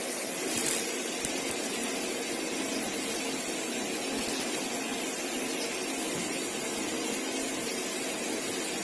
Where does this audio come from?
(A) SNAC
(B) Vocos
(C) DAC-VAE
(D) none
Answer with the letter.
D